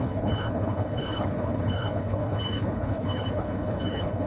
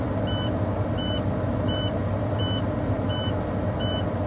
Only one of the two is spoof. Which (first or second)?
first